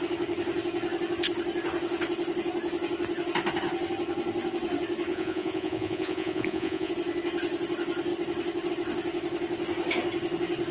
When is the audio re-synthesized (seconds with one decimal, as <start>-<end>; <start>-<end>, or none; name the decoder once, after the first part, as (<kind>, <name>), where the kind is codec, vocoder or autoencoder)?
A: 5.1-6.9 (vocoder, Vocos)